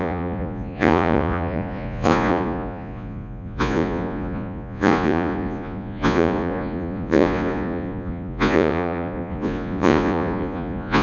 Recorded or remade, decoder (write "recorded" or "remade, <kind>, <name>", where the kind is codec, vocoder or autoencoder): remade, vocoder, Vocos